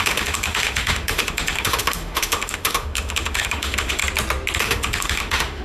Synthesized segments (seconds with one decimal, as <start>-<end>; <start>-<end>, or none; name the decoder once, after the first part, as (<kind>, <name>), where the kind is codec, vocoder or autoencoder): 0.0-4.0 (autoencoder, DAC-VAE); 4.6-5.6